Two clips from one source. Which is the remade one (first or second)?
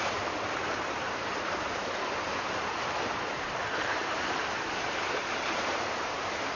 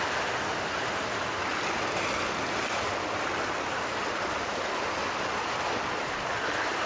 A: first